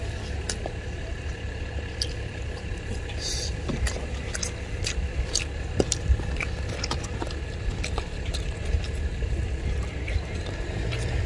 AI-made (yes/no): no